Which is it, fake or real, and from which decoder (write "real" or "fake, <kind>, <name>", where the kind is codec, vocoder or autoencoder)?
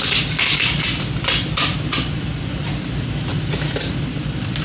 real